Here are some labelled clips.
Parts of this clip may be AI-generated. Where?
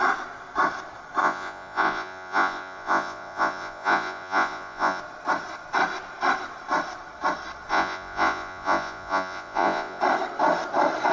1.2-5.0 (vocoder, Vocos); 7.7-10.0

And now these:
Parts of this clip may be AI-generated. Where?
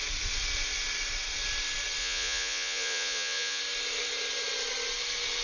2.0-3.6 (vocoder, Vocos)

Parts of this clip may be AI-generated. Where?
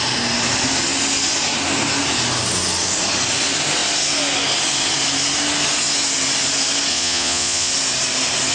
6.9-7.7 (vocoder, Vocos)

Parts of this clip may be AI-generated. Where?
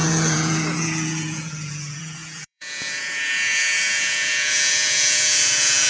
0.0-5.9 (vocoder, Vocos)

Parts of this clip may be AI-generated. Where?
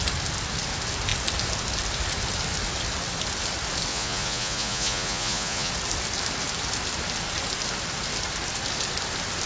3.9-5.7 (vocoder, Vocos)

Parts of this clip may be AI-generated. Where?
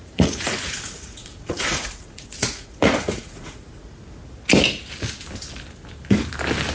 0.0-4.0 (vocoder, Vocos)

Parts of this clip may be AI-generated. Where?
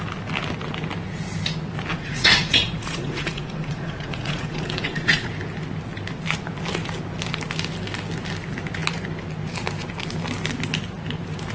1.9-5.3 (vocoder, Vocos)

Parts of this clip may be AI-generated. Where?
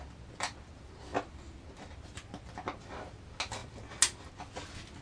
none